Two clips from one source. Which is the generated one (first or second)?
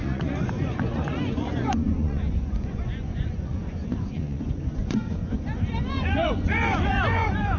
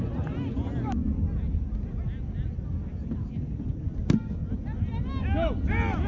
first